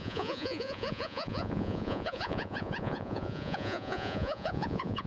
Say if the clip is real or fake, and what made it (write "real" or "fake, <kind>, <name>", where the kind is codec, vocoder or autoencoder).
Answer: fake, vocoder, Vocos